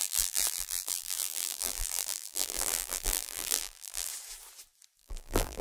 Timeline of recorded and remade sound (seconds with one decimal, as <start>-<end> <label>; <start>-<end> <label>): 0.0-4.1 remade; 4.1-5.0 recorded; 5.0-5.6 remade